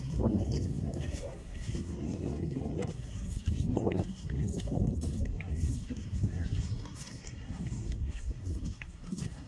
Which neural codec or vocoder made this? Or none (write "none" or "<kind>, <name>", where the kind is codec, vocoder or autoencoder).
codec, SNAC